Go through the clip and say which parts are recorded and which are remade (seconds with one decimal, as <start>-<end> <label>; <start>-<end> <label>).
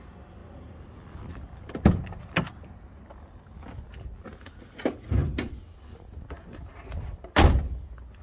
0.0-8.2 recorded